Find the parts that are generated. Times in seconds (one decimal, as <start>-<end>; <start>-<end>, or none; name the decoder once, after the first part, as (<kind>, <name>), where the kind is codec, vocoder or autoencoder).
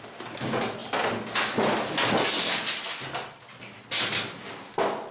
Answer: none